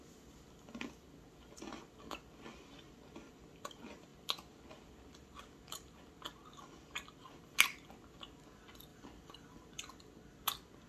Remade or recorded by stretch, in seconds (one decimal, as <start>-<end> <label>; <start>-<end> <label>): 0.0-8.9 recorded; 8.9-9.7 remade; 9.7-10.9 recorded